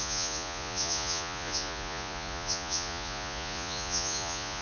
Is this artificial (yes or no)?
yes